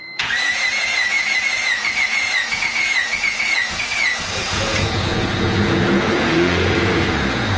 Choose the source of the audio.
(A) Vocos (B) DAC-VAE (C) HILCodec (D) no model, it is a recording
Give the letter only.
A